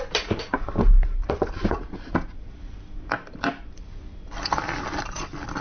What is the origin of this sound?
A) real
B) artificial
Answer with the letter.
A